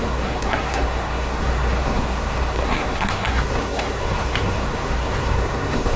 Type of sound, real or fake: fake